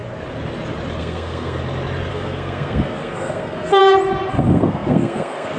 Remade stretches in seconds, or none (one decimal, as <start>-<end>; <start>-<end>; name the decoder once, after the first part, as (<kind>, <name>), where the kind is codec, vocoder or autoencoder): 1.0-1.6 (codec, SNAC); 2.1-3.8; 4.3-5.6